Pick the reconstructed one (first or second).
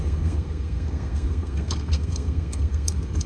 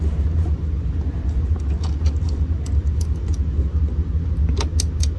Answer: first